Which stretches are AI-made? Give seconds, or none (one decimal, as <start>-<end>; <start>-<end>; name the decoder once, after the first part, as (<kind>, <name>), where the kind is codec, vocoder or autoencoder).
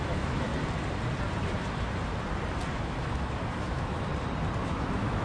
0.0-0.5 (autoencoder, DAC-VAE); 2.7-4.1; 4.6-5.2